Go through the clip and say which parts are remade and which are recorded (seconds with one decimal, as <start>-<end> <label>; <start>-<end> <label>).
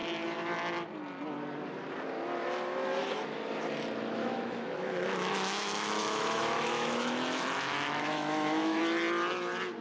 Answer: 0.0-4.2 recorded; 4.2-8.8 remade; 8.8-9.8 recorded